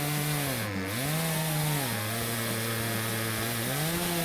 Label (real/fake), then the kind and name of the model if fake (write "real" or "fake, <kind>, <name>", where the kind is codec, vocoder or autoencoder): real